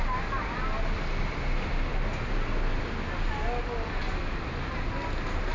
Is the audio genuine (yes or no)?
yes